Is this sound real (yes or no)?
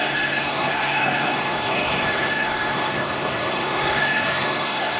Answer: no